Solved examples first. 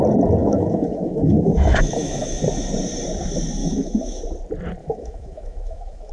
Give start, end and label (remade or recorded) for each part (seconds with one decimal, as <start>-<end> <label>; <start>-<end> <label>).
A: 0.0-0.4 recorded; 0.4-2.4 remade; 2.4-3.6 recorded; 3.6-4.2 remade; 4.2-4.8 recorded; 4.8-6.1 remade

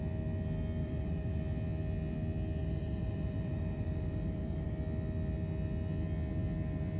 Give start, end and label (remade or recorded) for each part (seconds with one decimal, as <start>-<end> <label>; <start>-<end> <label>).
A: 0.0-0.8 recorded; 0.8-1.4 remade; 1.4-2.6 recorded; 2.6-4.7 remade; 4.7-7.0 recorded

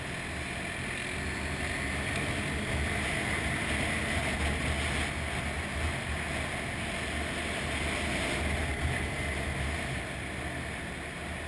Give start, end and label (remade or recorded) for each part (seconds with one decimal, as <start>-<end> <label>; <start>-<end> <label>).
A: 0.0-11.5 recorded

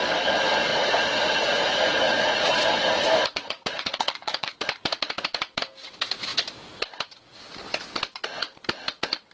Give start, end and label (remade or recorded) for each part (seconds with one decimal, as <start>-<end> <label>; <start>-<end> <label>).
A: 0.0-0.7 recorded; 0.7-4.5 remade; 4.5-9.3 recorded

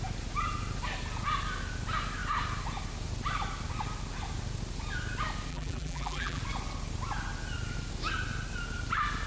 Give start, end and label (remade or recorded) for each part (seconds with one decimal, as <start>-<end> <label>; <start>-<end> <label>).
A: 0.0-5.5 recorded; 5.5-6.4 remade; 6.4-9.3 recorded